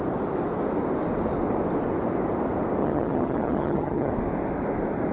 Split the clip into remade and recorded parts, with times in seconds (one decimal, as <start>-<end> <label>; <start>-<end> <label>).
0.0-2.8 recorded; 2.8-4.1 remade; 4.1-5.1 recorded